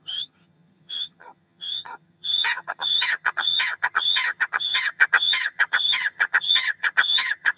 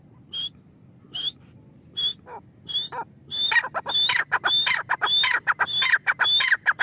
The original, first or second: second